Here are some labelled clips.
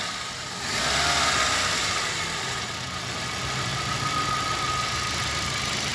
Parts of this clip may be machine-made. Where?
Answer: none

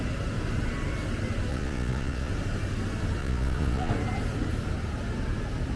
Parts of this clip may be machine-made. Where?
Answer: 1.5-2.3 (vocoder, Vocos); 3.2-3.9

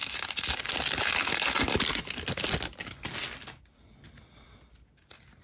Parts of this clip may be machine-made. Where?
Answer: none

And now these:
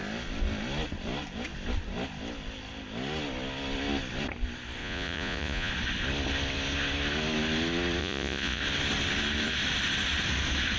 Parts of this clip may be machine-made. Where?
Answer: 4.8-5.7 (vocoder, Vocos); 8.0-8.6

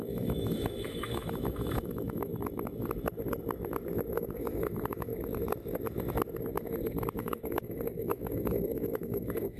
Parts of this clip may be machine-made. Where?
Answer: 0.0-2.3 (autoencoder, DAC-VAE); 4.1-5.1; 7.2-9.6